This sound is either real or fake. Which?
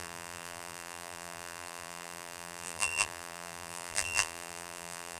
fake